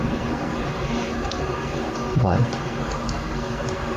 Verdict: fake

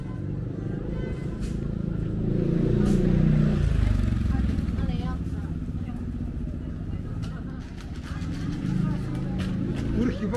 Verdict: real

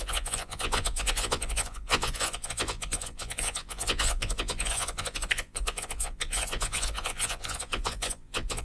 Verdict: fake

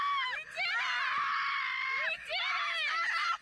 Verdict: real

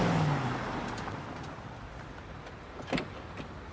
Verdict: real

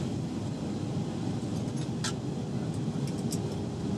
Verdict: real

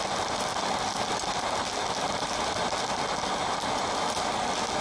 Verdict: real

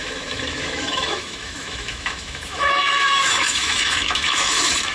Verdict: fake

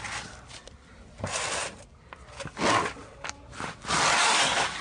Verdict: real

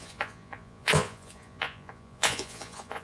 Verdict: fake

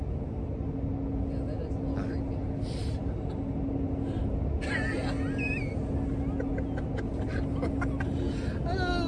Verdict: real